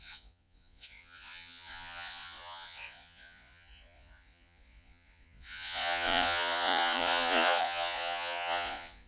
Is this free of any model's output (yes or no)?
no